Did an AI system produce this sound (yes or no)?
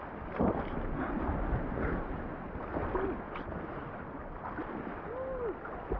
no